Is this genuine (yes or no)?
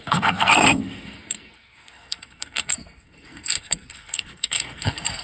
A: no